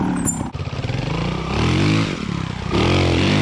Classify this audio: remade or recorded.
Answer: recorded